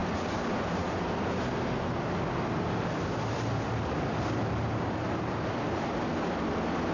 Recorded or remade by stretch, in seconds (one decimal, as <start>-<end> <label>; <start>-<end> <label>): 0.0-6.9 recorded